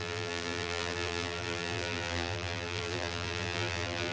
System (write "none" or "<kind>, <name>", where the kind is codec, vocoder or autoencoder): vocoder, BigVGAN v2